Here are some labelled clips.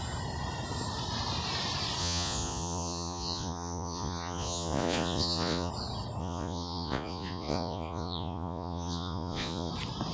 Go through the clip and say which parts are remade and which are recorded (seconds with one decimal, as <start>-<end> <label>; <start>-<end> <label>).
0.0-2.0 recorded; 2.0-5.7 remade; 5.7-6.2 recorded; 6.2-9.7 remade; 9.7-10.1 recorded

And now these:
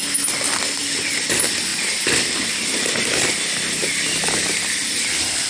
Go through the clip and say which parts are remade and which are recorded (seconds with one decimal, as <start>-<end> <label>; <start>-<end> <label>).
0.0-5.5 recorded

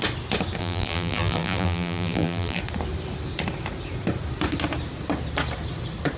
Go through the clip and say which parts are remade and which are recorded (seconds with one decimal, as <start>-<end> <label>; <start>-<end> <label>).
0.0-0.6 recorded; 0.6-2.6 remade; 2.6-6.2 recorded

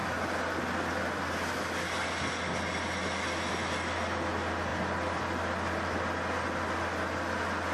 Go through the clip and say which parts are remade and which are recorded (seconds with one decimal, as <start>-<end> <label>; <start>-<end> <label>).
0.0-7.7 recorded

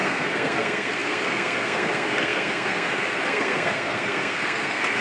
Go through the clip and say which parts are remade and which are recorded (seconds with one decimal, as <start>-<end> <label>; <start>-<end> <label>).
0.0-5.0 remade

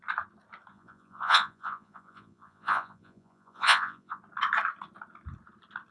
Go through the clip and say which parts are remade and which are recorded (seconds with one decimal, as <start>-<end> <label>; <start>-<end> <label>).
0.0-0.7 recorded; 0.7-4.2 remade; 4.2-5.9 recorded

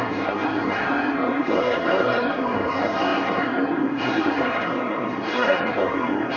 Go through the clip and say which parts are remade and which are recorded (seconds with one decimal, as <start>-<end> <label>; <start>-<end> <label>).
0.0-6.4 remade

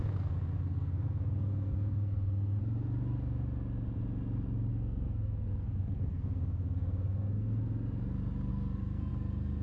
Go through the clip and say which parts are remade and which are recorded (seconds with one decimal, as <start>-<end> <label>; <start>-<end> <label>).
0.0-2.6 remade; 2.6-4.7 recorded; 4.7-7.6 remade; 7.6-8.5 recorded; 8.5-9.1 remade; 9.1-9.6 recorded